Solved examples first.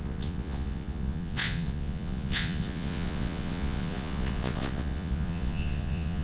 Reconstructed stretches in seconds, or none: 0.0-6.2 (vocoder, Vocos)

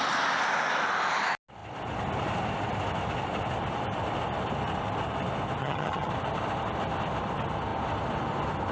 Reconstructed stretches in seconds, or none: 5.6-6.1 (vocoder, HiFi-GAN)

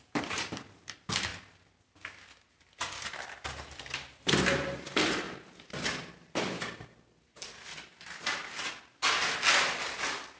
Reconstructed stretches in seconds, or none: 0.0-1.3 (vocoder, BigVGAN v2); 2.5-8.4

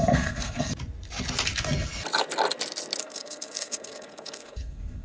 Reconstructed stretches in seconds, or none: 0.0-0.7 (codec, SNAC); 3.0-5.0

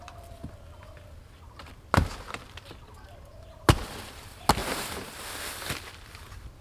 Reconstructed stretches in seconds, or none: none